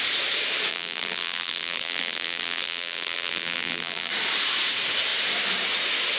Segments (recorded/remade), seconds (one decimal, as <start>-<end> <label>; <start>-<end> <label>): 0.0-0.7 recorded; 0.7-4.1 remade; 4.1-6.2 recorded